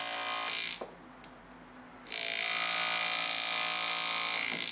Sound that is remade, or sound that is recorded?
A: recorded